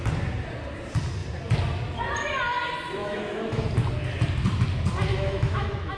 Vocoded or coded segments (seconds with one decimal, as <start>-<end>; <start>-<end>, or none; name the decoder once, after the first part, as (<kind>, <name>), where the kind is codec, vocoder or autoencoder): 3.0-3.7 (autoencoder, DAC-VAE); 5.1-6.0